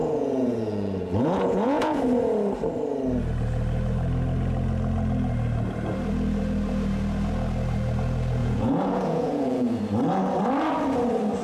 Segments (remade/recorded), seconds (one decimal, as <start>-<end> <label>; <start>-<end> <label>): 0.0-2.0 remade; 2.0-8.4 recorded; 8.4-9.8 remade; 9.8-11.4 recorded